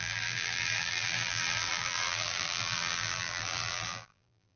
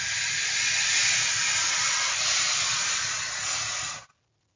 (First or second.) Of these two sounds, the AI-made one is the first